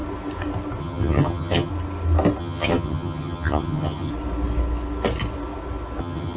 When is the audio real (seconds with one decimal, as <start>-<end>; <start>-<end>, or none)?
0.0-0.8; 1.7-2.4; 4.1-6.0